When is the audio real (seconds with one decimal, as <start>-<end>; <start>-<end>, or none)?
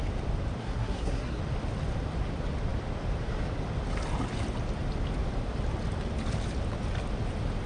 0.0-0.6; 1.4-7.7